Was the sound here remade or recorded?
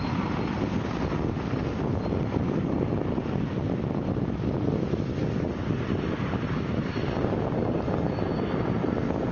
remade